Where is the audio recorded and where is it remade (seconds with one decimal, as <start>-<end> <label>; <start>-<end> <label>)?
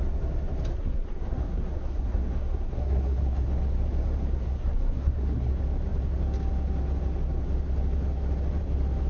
0.0-0.7 recorded; 0.7-3.5 remade; 3.5-4.3 recorded; 4.3-5.5 remade; 5.5-9.1 recorded